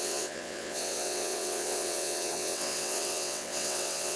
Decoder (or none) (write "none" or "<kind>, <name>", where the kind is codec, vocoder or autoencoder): vocoder, WaveNeXt